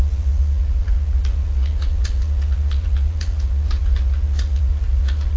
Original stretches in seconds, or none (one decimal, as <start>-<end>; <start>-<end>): none